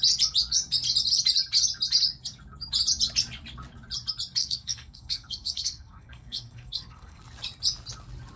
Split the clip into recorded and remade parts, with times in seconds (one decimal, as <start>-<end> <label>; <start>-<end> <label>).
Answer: 0.0-4.4 recorded; 4.4-7.2 remade; 7.2-8.4 recorded